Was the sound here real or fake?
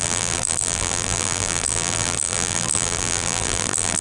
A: fake